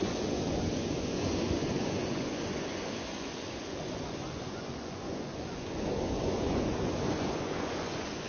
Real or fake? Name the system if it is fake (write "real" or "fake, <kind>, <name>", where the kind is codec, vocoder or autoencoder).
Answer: fake, vocoder, Vocos